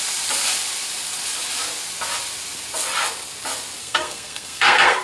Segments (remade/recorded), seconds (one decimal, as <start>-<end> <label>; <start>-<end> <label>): 0.0-3.8 recorded; 3.8-5.0 remade